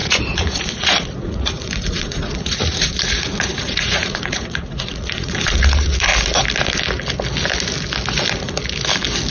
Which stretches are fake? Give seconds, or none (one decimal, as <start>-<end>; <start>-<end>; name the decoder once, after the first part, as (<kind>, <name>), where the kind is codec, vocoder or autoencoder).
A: 0.0-6.1 (vocoder, Vocos)